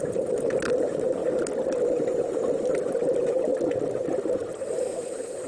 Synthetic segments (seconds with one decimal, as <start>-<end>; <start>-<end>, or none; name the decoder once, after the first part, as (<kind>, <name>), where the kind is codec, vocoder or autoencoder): 0.0-1.2 (vocoder, BigVGAN v2); 2.2-3.5; 4.1-5.5